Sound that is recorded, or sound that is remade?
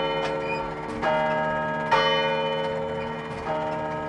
recorded